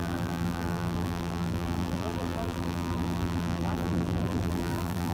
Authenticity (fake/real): fake